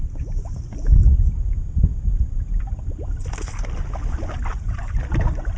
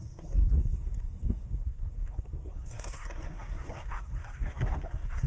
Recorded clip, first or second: first